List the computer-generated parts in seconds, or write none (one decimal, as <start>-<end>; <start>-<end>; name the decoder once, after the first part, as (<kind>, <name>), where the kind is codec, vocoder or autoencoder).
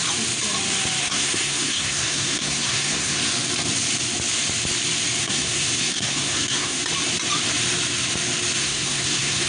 1.0-3.2 (codec, SNAC); 5.2-6.8; 8.6-9.5